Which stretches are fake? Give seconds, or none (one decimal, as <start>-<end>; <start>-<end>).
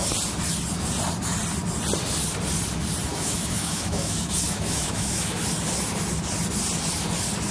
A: 3.1-5.4